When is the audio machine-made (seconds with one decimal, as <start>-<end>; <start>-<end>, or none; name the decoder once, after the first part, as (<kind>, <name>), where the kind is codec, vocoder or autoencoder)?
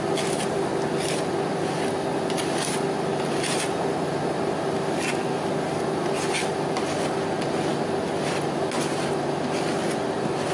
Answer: none